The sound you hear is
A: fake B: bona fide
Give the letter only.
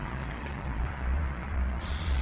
A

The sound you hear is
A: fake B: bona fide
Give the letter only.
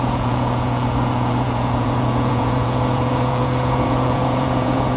A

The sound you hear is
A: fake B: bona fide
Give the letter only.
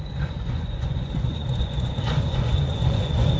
A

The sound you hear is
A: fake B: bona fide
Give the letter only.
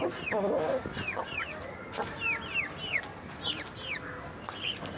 B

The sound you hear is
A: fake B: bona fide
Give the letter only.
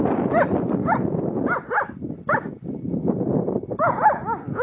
B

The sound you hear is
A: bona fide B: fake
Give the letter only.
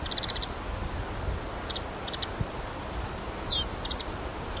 A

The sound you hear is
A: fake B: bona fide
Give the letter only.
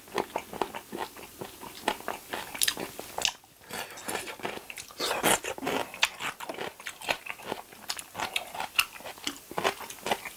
B